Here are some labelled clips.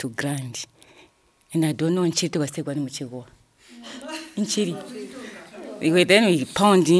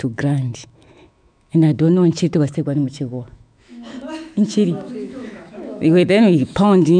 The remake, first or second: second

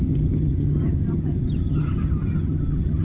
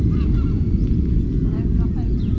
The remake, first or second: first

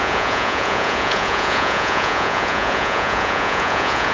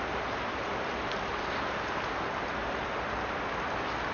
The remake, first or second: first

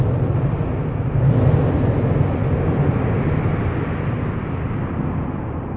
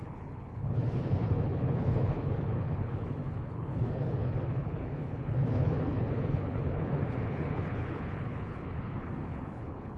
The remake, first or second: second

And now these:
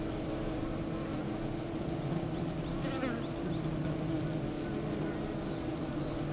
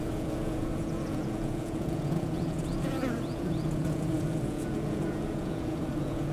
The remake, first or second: second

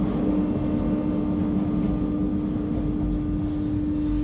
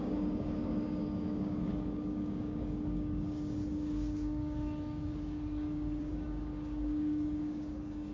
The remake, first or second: second